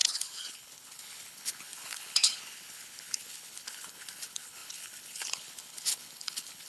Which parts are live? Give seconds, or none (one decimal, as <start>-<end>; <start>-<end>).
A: none